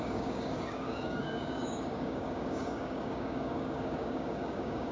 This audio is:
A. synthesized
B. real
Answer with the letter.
A